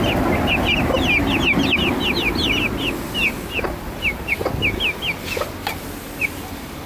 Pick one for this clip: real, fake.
real